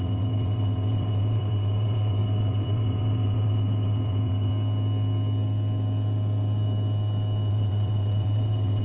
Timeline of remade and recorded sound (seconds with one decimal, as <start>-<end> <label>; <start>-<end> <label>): 0.0-4.5 remade; 4.5-7.5 recorded; 7.5-8.8 remade